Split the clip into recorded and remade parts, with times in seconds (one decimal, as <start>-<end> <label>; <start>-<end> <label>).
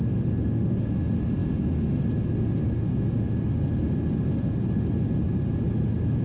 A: 0.0-6.2 recorded